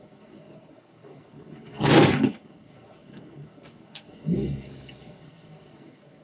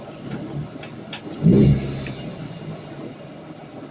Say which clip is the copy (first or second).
first